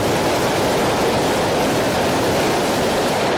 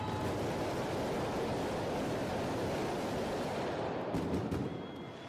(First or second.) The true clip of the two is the second